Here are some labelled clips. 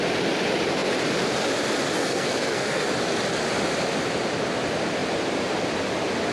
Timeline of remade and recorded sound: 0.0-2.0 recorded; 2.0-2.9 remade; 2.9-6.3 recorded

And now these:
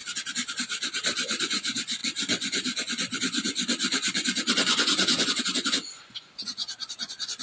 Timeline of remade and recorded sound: 0.0-1.4 recorded; 1.4-7.4 remade